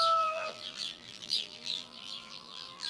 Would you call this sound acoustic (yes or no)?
no